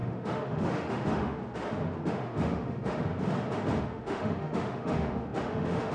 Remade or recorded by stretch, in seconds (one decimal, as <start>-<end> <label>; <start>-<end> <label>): 0.0-1.4 remade; 1.4-2.1 recorded; 2.1-3.1 remade; 3.1-3.8 recorded; 3.8-5.9 remade